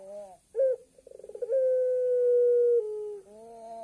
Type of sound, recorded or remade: recorded